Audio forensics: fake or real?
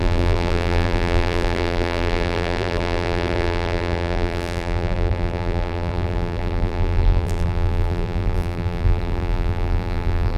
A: fake